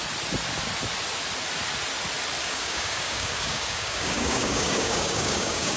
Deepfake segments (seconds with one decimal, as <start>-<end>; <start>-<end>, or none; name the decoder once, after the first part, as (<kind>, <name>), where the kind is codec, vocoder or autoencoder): 2.4-5.8 (codec, DAC)